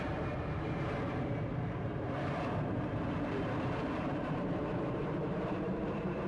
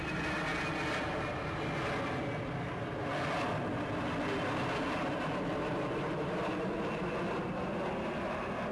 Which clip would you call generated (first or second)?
first